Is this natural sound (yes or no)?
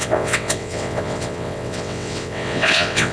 no